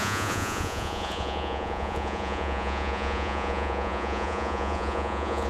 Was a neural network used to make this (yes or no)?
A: yes